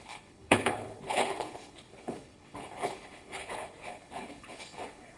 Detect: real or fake fake